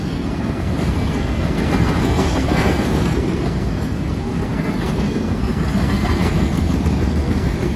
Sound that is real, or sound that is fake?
fake